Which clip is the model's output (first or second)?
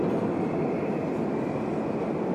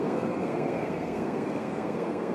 second